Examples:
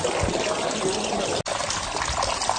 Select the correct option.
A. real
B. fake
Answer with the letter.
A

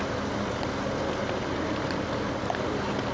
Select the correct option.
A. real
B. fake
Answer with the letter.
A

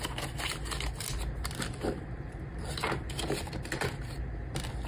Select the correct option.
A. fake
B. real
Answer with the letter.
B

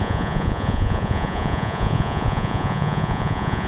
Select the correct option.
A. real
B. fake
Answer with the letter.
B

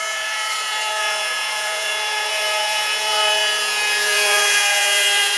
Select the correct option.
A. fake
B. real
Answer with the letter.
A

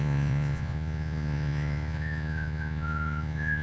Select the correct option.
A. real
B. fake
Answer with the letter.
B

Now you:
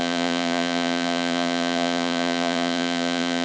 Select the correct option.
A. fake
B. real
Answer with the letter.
A